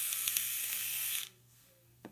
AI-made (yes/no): yes